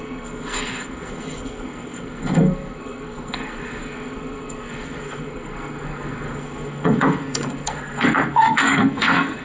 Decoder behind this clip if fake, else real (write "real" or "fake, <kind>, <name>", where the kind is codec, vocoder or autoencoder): fake, codec, SNAC